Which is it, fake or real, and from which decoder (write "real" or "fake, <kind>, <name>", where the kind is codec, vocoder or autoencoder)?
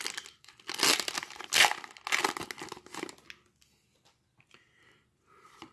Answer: real